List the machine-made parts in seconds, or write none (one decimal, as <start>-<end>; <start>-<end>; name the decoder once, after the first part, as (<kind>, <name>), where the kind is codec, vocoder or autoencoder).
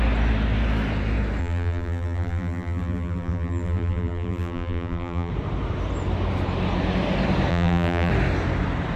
1.4-5.3 (vocoder, BigVGAN v2); 7.5-8.1